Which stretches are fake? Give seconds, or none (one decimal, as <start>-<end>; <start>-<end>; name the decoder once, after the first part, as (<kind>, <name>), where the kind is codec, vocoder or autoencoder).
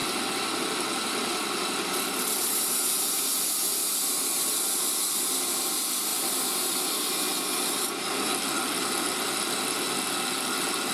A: none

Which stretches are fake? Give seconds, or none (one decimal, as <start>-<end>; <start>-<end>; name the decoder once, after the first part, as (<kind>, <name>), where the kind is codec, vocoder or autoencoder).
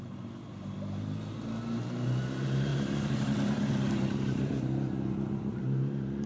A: none